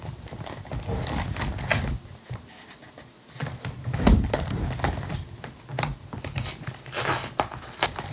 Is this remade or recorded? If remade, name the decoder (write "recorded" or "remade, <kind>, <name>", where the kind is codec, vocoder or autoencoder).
recorded